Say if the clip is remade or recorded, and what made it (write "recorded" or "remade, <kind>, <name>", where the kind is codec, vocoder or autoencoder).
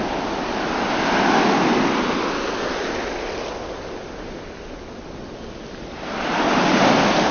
recorded